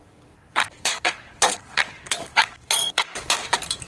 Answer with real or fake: fake